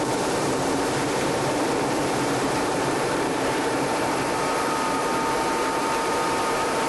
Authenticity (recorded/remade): remade